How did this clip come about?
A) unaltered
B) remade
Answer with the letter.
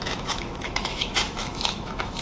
B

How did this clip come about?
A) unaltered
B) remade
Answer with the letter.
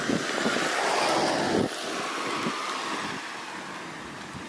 A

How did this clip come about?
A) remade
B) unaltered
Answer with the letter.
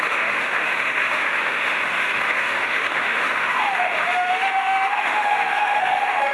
A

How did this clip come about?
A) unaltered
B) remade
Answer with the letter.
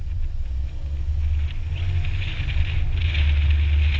A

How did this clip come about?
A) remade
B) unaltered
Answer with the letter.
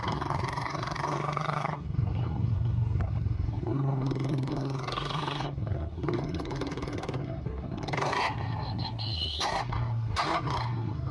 A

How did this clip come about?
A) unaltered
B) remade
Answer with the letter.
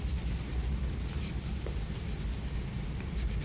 B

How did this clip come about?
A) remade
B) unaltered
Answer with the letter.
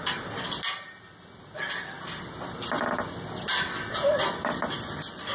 B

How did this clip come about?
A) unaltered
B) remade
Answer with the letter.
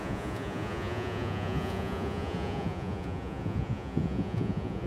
B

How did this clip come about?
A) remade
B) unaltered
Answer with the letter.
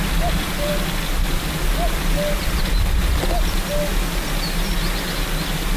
B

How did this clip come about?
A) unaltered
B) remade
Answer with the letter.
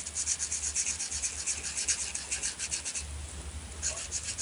A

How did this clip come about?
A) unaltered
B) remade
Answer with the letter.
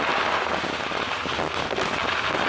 A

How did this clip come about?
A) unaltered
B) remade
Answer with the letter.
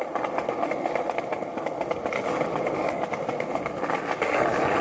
A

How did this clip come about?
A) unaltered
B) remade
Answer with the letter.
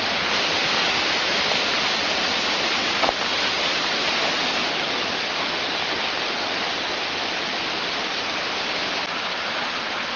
A